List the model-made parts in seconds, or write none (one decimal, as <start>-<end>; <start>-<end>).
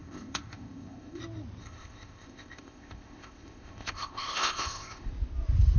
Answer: 0.0-1.2; 1.6-5.1